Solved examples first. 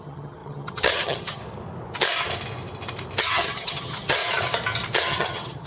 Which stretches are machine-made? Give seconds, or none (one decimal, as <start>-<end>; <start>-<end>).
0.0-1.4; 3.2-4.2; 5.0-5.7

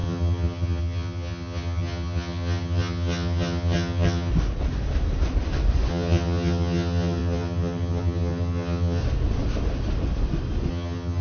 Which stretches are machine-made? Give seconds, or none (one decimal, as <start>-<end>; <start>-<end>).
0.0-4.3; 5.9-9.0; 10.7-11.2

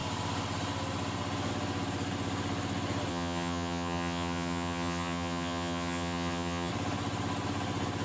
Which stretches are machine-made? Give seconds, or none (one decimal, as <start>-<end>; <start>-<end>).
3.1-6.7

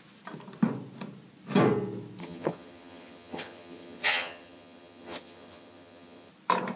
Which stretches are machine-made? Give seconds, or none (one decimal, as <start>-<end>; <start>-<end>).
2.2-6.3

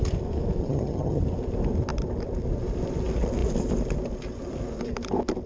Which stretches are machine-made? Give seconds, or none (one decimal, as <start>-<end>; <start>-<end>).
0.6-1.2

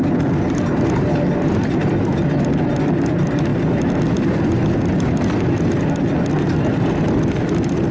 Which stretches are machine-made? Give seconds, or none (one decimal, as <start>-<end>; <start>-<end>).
none

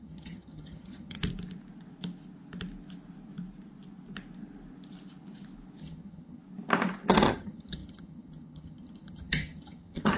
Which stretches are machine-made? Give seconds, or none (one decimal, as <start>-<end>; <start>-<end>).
0.0-1.2; 5.8-6.4; 7.1-10.2

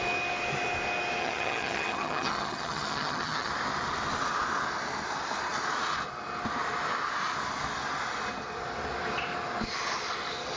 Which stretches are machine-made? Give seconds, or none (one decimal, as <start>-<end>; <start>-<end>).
1.2-3.5